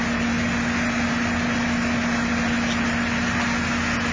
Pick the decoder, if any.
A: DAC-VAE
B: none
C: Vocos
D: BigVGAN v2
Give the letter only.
B